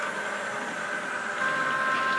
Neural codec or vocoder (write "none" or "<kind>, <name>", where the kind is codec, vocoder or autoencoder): none